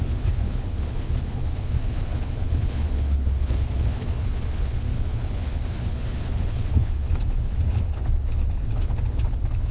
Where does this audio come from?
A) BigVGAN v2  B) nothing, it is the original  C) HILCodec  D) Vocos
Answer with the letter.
C